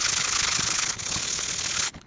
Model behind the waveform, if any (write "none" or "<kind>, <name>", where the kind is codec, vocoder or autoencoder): codec, HILCodec